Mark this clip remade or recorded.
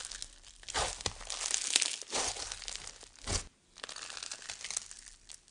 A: recorded